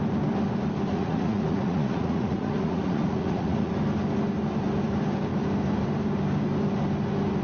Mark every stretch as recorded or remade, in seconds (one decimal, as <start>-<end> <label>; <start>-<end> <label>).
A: 0.0-0.9 recorded; 0.9-3.7 remade; 3.7-7.4 recorded